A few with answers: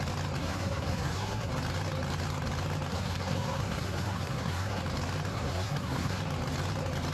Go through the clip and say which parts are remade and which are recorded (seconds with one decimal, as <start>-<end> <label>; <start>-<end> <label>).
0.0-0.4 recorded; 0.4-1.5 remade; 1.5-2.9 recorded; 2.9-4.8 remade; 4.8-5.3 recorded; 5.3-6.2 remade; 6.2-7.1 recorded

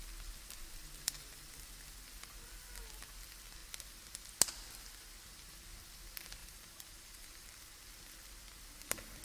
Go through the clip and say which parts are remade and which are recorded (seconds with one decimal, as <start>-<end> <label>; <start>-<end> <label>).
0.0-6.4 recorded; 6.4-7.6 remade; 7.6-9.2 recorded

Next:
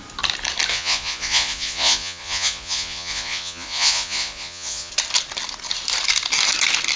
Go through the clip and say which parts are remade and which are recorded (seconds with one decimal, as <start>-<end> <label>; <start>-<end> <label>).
0.0-0.7 recorded; 0.7-4.9 remade; 4.9-7.0 recorded

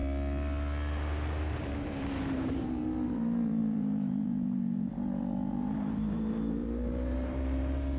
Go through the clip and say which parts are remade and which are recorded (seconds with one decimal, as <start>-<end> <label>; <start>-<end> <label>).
0.0-1.6 recorded; 1.6-8.0 remade

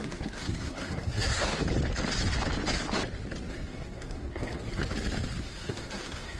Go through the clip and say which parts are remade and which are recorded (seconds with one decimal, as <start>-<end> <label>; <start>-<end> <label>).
0.0-1.4 remade; 1.4-3.5 recorded; 3.5-4.8 remade; 4.8-5.4 recorded; 5.4-6.4 remade